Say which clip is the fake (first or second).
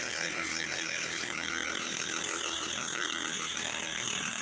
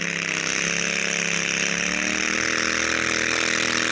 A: first